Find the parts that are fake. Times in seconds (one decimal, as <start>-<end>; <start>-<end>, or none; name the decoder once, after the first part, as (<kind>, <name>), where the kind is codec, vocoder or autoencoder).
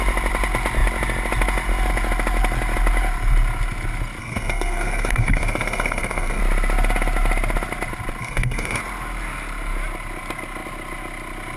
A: 4.2-6.4 (codec, SNAC); 8.2-8.8